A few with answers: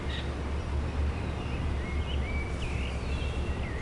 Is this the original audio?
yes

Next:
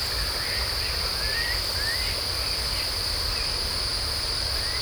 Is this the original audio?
yes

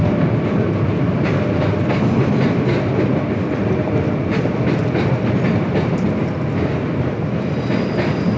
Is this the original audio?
yes